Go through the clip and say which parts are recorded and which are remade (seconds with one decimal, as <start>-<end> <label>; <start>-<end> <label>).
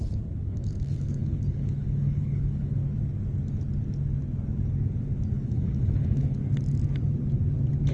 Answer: 0.0-2.8 remade; 2.8-5.3 recorded; 5.3-6.4 remade; 6.4-7.9 recorded